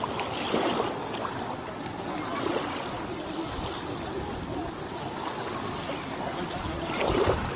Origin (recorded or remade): recorded